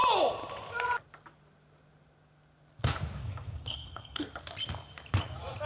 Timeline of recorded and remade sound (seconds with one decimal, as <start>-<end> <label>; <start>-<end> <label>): 0.0-3.2 recorded; 3.2-4.4 remade; 4.4-5.7 recorded